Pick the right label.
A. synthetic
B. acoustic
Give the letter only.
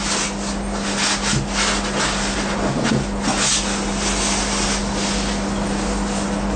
B